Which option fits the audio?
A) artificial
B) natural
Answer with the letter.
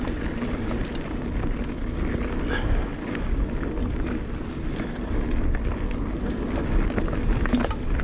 B